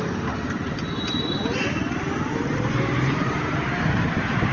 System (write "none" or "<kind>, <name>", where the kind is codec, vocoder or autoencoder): vocoder, BigVGAN v2